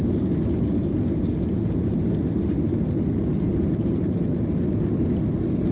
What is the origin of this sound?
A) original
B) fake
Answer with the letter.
A